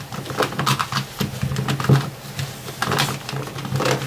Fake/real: real